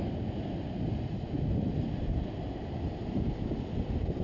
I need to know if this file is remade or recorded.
recorded